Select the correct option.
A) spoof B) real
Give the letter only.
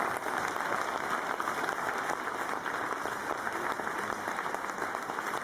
B